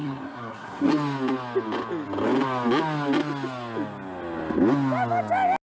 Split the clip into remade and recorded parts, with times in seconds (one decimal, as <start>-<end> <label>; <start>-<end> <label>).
0.0-0.9 remade; 0.9-5.8 recorded